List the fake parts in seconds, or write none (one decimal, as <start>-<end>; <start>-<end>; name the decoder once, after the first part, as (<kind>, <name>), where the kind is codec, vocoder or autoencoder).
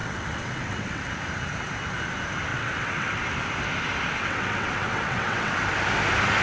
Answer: 0.0-1.1 (vocoder, WaveNeXt); 2.5-3.2; 4.2-5.6